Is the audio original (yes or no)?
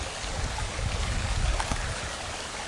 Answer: no